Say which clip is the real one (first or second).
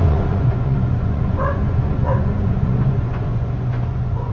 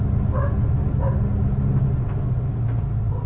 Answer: second